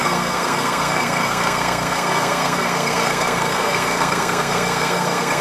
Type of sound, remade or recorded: remade